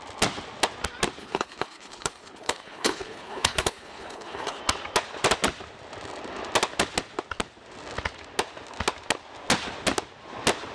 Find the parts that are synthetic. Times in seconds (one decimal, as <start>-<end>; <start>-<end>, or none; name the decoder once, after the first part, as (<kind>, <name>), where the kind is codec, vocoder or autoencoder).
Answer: 1.2-4.6 (codec, HILCodec)